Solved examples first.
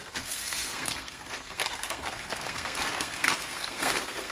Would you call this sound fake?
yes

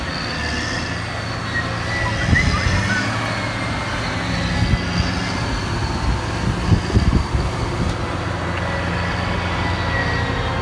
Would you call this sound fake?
no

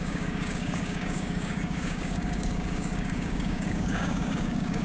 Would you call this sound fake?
yes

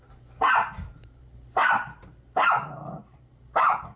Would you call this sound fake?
yes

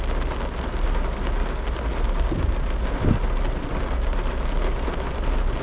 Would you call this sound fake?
no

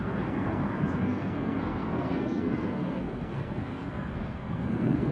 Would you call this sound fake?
yes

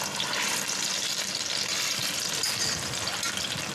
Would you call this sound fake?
no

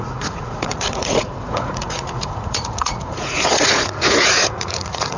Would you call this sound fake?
yes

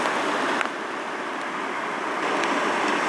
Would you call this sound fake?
no